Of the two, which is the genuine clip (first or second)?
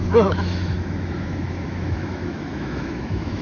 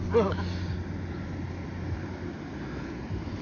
second